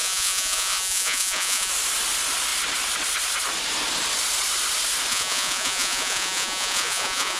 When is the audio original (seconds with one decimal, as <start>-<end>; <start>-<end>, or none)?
1.7-5.1